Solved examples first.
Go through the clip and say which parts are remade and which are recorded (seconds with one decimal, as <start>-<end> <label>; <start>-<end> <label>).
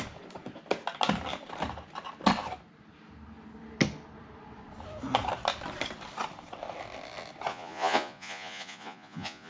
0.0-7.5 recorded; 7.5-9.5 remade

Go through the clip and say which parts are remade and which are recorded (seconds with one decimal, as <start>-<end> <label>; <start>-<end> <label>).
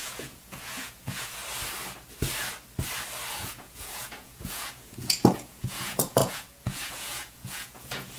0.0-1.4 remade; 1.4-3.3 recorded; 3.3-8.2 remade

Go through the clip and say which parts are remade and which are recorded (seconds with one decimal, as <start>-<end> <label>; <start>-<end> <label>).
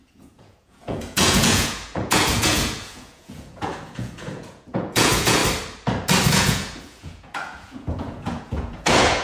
0.0-5.4 remade; 5.4-6.3 recorded; 6.3-9.2 remade